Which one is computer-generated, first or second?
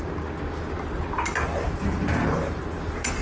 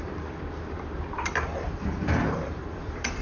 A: second